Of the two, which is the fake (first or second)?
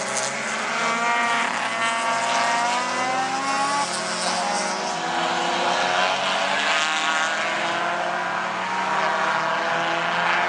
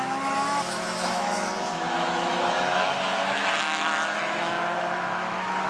second